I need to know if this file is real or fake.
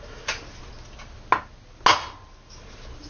real